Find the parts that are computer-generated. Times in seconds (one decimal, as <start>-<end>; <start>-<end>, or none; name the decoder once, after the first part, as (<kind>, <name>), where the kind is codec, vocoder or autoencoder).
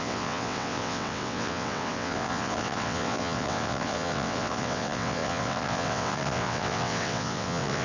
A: 0.0-7.8 (vocoder, WaveNeXt)